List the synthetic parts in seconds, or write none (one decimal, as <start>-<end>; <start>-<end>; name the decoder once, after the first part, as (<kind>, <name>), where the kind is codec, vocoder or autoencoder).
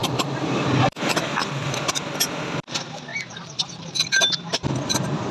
0.0-0.6 (vocoder, BigVGAN v2); 1.4-1.9; 3.1-4.2